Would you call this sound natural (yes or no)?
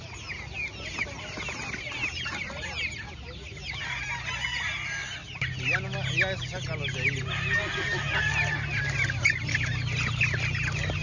yes